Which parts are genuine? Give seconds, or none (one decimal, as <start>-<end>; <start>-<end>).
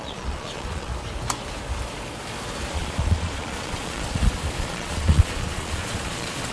0.9-2.7